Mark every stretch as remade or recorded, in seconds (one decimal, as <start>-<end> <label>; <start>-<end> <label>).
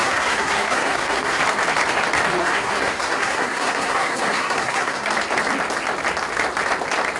0.0-1.4 remade; 1.4-2.4 recorded; 2.4-5.1 remade; 5.1-7.2 recorded